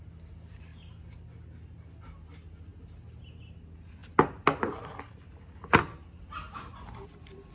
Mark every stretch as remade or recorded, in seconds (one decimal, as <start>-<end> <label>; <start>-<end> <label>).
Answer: 0.0-7.5 recorded